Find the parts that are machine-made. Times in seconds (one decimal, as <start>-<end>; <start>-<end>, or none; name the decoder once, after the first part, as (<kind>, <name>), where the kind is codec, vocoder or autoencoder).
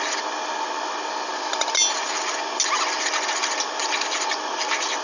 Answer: none